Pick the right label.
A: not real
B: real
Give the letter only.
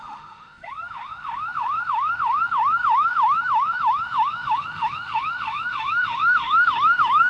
A